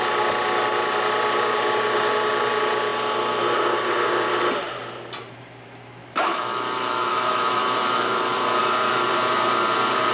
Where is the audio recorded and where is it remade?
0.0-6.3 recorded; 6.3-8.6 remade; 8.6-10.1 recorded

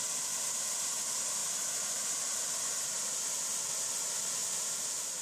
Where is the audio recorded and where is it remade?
0.0-5.2 recorded

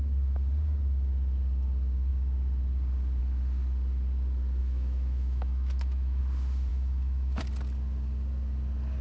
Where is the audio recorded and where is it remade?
0.0-4.6 recorded; 4.6-6.2 remade; 6.2-6.7 recorded; 6.7-7.4 remade; 7.4-9.0 recorded

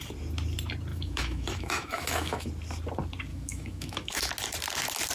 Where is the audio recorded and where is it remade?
0.0-0.9 recorded; 0.9-2.5 remade; 2.5-3.3 recorded; 3.3-4.3 remade; 4.3-5.1 recorded

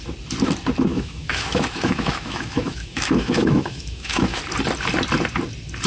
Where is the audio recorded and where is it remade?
0.0-0.9 recorded; 0.9-4.4 remade; 4.4-5.9 recorded

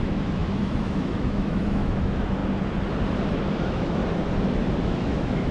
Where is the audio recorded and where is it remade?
0.0-2.4 remade; 2.4-3.6 recorded; 3.6-4.0 remade; 4.0-4.8 recorded; 4.8-5.5 remade

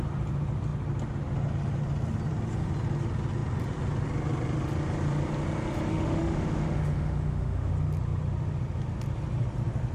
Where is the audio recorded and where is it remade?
0.0-5.9 recorded; 5.9-7.7 remade; 7.7-9.9 recorded

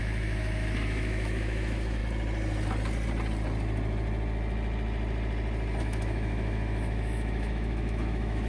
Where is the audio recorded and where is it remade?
0.0-2.0 remade; 2.0-5.8 recorded; 5.8-8.5 remade